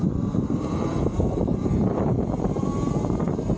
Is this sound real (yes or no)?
no